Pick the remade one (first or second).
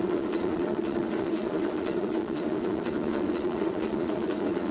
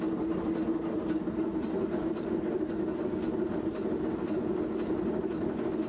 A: first